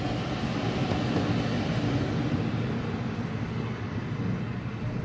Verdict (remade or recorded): recorded